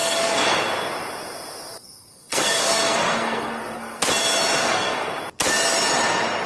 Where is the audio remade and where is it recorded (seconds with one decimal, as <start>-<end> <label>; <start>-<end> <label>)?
0.0-0.6 remade; 0.6-1.8 recorded; 1.8-4.0 remade; 4.0-4.6 recorded; 4.6-5.1 remade; 5.1-6.5 recorded